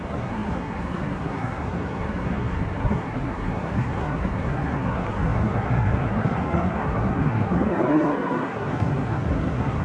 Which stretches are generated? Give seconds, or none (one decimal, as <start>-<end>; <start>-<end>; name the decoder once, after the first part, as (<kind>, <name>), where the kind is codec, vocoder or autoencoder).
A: 0.0-9.8 (codec, SNAC)